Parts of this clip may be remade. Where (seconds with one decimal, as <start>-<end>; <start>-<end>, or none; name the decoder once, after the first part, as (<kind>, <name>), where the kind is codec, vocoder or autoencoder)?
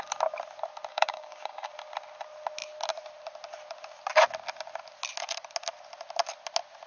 0.9-1.7 (codec, DAC)